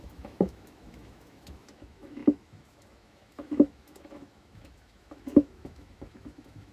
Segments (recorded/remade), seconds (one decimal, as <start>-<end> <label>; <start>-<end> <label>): 0.0-6.7 remade